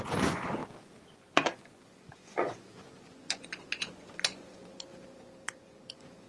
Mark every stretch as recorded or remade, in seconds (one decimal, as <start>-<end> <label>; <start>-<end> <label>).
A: 0.0-0.6 remade; 0.6-1.1 recorded; 1.1-6.3 remade